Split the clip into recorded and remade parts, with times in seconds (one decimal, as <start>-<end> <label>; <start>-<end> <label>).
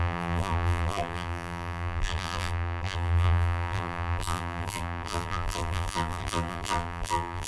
0.0-7.5 remade